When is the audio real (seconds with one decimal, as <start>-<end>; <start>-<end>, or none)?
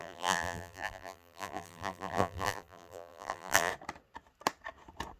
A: 3.7-5.2